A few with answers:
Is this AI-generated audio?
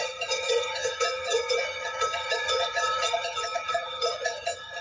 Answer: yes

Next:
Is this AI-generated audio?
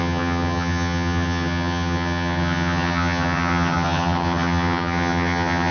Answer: yes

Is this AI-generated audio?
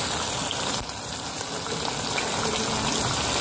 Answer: no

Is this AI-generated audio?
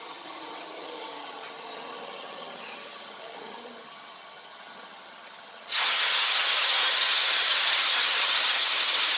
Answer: yes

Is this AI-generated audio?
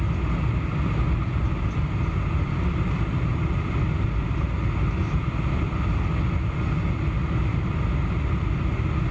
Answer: no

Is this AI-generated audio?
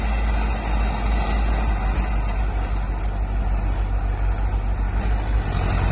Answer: no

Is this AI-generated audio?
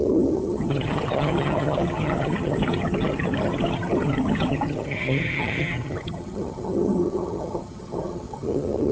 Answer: yes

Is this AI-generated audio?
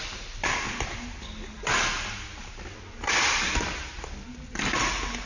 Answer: no